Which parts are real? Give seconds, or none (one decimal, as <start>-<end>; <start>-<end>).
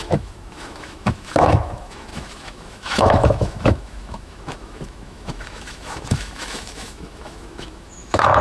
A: none